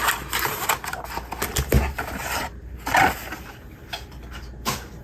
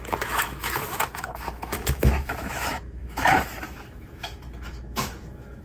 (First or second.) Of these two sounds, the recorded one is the first